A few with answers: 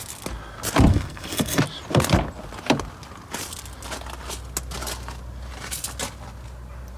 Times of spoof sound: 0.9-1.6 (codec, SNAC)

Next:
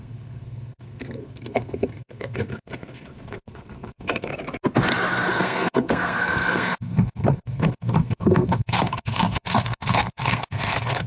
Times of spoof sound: 0.0-4.3 (codec, SNAC); 5.3-11.1

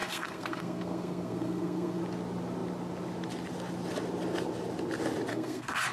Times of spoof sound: 0.0-2.0 (codec, SNAC); 5.3-5.9

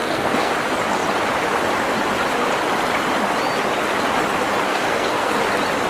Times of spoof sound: 0.0-0.5 (codec, SNAC); 4.7-5.4

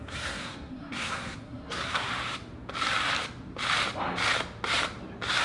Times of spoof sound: 0.0-2.1 (codec, SNAC)